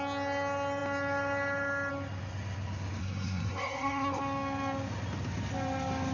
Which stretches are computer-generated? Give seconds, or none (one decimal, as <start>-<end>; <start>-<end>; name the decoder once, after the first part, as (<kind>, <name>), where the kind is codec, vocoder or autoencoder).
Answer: 3.0-4.2 (codec, SNAC)